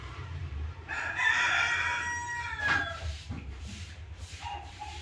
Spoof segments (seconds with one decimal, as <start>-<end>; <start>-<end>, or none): 0.0-1.9; 2.8-5.0